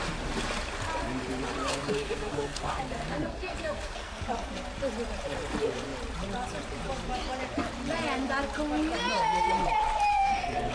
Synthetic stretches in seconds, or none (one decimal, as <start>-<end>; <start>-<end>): 1.7-4.2; 10.1-10.7